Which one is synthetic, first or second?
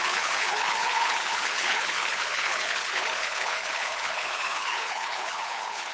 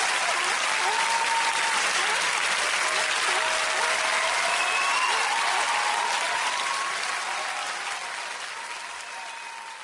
first